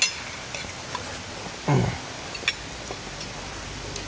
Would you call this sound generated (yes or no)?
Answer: no